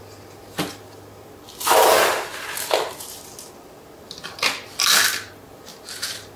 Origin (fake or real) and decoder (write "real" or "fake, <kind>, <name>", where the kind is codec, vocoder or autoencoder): real